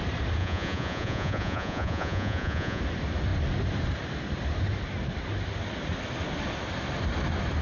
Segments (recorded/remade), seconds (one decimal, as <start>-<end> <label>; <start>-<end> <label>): 0.0-0.4 recorded; 0.4-2.8 remade; 2.8-7.6 recorded